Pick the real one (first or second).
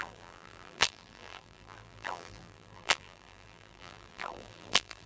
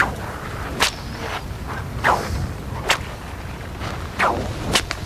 second